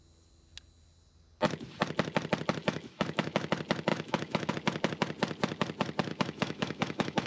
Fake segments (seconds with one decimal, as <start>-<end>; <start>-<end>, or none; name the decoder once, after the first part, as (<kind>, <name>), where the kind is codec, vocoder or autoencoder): 2.6-3.5 (autoencoder, DAC-VAE); 3.9-4.5; 6.1-7.3